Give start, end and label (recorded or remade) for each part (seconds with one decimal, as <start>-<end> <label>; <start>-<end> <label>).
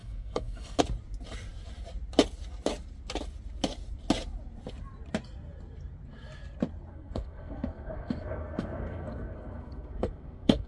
0.0-0.8 remade; 0.8-6.9 recorded; 6.9-10.7 remade